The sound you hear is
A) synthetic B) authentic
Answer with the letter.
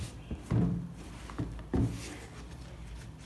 B